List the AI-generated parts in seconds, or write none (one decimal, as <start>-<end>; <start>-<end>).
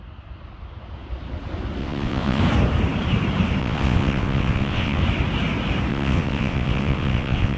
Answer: 1.8-2.4; 3.6-5.0; 5.9-7.6